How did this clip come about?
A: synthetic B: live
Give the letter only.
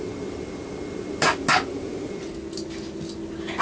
B